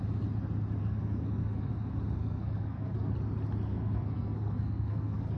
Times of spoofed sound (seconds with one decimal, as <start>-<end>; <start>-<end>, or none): 0.8-1.7; 2.2-3.1; 3.7-5.4